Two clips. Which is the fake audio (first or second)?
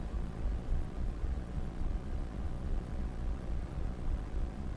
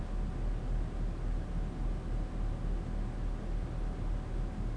first